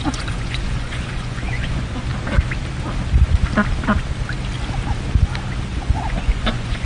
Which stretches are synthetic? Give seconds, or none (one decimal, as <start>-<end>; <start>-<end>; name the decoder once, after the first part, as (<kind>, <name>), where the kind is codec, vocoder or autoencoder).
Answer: 0.0-2.1 (vocoder, Vocos); 5.7-6.8